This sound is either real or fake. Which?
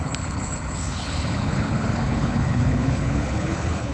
fake